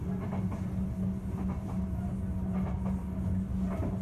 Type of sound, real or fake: real